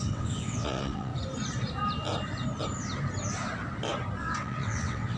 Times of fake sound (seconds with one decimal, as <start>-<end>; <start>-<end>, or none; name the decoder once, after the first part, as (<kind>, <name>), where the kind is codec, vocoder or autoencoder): 0.0-1.1 (vocoder, WaveNeXt); 4.2-5.2